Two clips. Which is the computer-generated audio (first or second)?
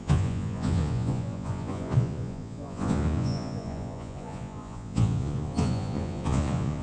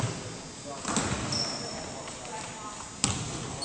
first